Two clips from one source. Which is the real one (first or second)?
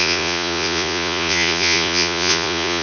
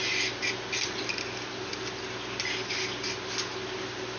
second